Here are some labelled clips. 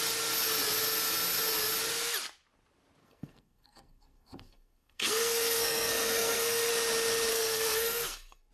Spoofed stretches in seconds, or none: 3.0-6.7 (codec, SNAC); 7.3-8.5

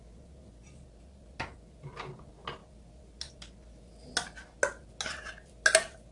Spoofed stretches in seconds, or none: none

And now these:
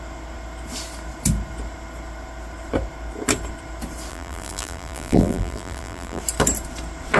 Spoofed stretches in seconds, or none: 4.1-6.2 (vocoder, BigVGAN v2)

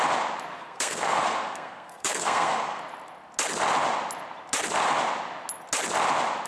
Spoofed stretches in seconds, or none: 0.5-2.8 (codec, SNAC)

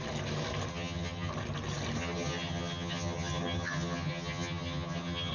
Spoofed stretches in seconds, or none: 0.7-1.3 (vocoder, HiFi-GAN); 2.0-5.3